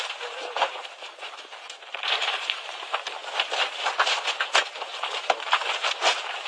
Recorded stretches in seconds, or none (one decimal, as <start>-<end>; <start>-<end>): 3.2-4.4